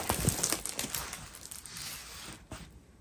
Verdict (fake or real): real